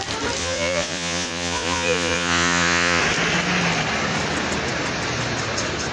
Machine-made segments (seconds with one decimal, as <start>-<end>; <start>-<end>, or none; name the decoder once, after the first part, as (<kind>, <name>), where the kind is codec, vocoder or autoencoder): 0.4-3.0 (vocoder, Vocos)